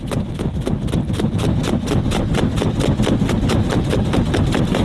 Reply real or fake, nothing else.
real